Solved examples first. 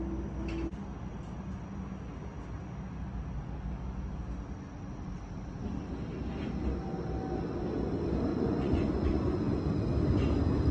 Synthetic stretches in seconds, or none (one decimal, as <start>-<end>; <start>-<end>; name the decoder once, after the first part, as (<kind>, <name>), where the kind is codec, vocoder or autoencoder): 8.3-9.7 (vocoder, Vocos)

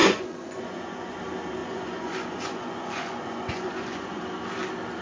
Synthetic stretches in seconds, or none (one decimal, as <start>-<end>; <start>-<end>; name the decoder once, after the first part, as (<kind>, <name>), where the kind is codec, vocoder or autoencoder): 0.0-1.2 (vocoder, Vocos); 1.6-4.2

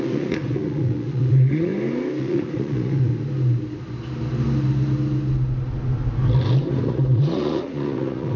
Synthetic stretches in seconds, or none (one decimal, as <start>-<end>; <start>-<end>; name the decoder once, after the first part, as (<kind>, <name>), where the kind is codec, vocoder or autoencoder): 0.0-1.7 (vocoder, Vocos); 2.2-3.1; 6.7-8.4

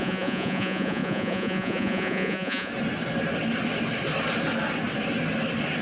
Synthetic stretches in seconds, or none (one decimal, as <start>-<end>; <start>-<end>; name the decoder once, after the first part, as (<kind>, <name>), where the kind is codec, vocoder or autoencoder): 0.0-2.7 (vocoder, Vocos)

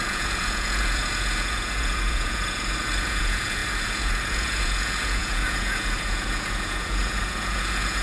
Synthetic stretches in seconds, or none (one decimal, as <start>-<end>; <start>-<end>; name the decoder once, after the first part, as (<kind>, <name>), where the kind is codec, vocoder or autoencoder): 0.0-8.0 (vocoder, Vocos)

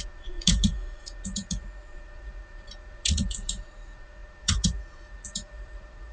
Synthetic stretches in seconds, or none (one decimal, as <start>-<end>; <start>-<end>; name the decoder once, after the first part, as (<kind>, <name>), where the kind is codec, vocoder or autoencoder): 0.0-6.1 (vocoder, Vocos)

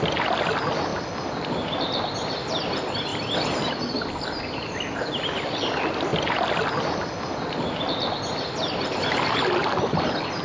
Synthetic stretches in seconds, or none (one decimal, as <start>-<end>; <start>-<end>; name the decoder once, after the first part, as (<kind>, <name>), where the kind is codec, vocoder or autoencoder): none

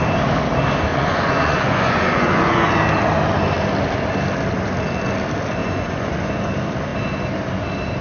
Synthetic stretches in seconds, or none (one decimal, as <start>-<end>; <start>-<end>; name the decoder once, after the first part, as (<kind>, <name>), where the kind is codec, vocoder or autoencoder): 0.9-2.7 (vocoder, Vocos); 5.6-6.5